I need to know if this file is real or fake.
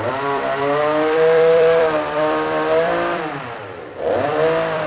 fake